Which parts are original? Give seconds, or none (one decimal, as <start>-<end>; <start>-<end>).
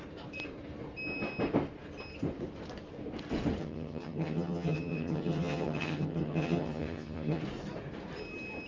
0.0-3.6; 7.4-8.7